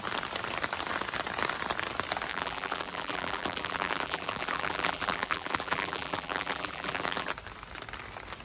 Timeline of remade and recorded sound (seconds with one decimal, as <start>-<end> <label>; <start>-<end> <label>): 0.0-2.3 recorded; 2.3-7.3 remade; 7.3-8.4 recorded